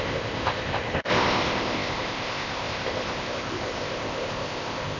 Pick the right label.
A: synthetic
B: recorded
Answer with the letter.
A